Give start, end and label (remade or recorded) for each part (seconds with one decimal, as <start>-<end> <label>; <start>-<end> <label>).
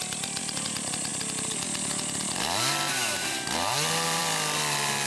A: 0.0-5.1 recorded